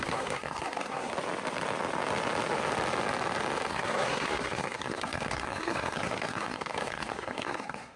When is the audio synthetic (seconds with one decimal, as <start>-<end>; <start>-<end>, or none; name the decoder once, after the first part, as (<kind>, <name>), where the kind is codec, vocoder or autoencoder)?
0.0-1.1 (codec, SNAC); 3.7-8.0